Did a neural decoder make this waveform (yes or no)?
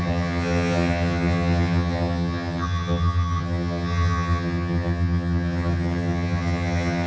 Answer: yes